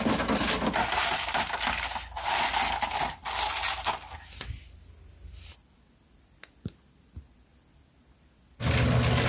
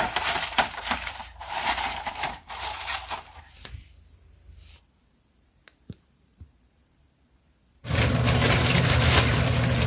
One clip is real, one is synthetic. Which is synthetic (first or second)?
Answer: second